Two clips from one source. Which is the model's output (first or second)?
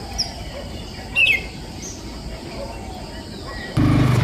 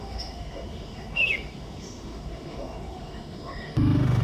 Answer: second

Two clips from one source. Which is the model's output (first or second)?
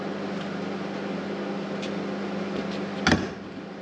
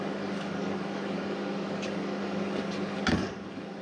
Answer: second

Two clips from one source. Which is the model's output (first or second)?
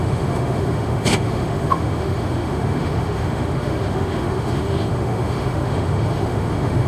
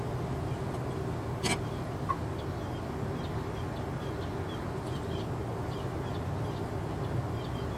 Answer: first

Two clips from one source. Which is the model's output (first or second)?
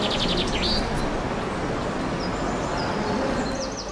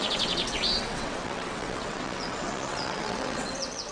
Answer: second